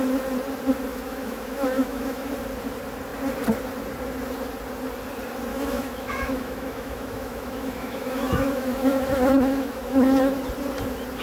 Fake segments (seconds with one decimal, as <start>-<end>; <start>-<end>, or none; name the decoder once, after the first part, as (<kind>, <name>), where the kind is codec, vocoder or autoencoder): 0.9-2.3 (autoencoder, DAC-VAE); 5.5-10.4